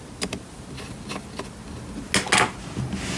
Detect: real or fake real